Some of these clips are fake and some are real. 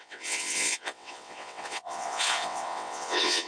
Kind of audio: fake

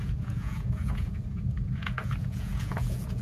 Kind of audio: fake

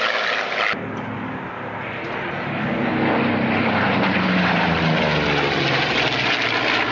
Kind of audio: real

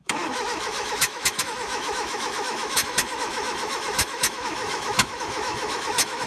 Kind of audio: fake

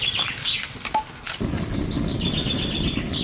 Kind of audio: real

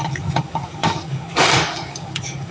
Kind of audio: fake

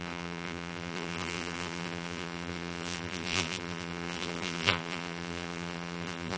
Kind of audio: fake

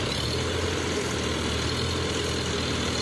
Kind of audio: real